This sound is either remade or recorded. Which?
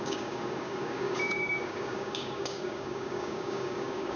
remade